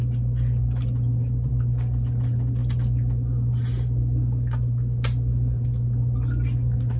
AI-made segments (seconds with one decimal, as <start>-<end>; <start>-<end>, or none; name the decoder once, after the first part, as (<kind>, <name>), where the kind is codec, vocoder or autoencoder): none